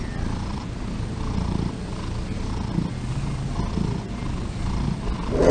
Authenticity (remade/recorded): recorded